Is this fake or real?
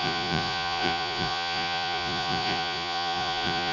fake